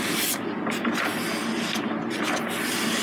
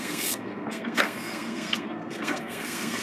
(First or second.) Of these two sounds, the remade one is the second